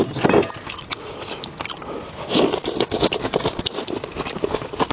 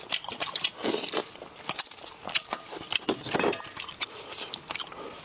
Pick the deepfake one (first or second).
second